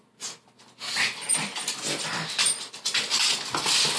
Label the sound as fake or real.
real